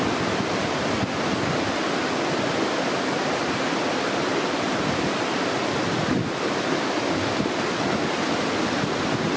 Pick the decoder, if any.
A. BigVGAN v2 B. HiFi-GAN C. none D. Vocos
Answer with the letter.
C